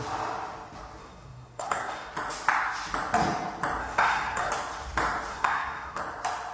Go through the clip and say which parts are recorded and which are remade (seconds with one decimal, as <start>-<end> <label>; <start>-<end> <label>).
0.0-1.0 recorded; 1.0-2.1 remade; 2.1-3.8 recorded; 3.8-4.5 remade; 4.5-5.3 recorded; 5.3-6.0 remade; 6.0-6.5 recorded